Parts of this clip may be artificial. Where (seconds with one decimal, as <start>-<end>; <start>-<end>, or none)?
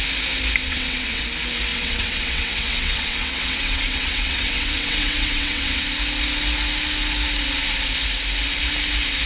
0.6-1.2; 1.7-5.8